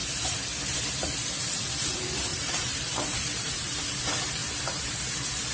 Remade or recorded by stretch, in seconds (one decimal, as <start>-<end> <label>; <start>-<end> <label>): 0.0-2.3 recorded; 2.3-3.8 remade; 3.8-4.4 recorded; 4.4-5.1 remade; 5.1-5.5 recorded